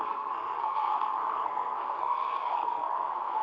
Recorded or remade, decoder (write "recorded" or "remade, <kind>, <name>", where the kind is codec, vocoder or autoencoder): remade, codec, SNAC